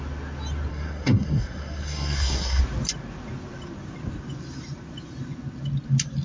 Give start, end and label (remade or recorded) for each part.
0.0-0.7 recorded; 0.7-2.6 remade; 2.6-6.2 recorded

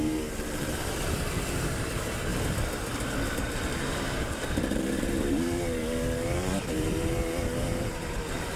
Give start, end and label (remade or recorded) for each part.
0.0-2.3 remade; 2.3-3.3 recorded; 3.3-8.6 remade